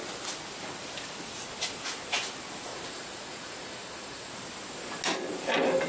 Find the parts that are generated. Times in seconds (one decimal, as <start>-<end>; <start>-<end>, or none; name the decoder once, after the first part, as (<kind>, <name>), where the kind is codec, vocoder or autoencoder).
2.7-4.3 (vocoder, Vocos)